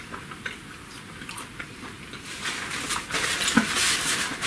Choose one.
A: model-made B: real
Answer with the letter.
B